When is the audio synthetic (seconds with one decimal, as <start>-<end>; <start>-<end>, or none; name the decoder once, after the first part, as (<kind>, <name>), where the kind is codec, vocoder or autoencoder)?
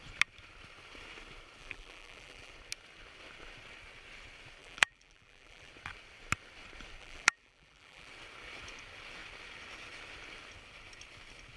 1.6-2.5 (vocoder, BigVGAN v2); 4.6-5.7; 7.0-8.1